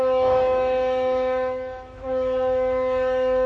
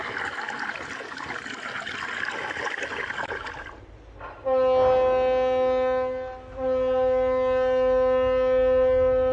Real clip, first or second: second